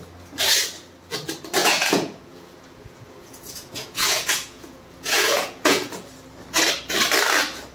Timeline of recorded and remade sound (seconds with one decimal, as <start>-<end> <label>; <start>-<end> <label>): 0.0-1.6 recorded; 1.6-6.1 remade; 6.1-7.7 recorded